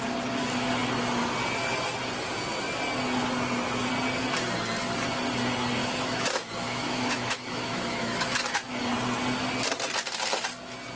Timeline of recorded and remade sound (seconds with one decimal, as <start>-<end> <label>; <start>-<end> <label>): 0.0-5.8 recorded; 5.8-8.8 remade; 8.8-11.0 recorded